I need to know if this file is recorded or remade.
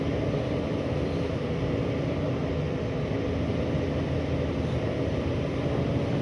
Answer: recorded